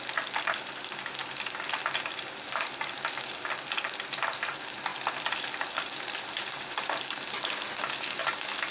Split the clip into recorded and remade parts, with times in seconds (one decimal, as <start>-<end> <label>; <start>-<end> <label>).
0.0-8.7 recorded